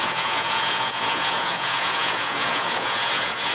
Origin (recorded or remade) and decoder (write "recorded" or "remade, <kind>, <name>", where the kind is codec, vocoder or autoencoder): remade, vocoder, Vocos